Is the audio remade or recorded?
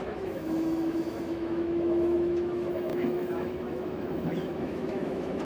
remade